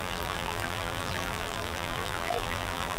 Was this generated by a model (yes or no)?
yes